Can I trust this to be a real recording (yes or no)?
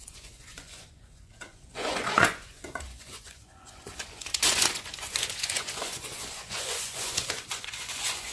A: no